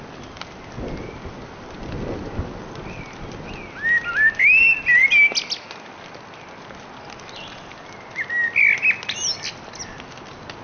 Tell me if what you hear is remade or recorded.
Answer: recorded